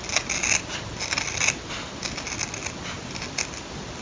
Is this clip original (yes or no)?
yes